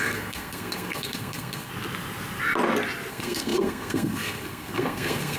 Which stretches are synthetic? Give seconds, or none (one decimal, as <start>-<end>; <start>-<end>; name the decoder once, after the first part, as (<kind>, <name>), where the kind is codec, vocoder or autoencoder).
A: 0.0-1.7 (codec, SNAC); 3.1-5.4